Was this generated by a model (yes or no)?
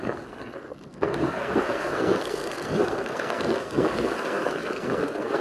yes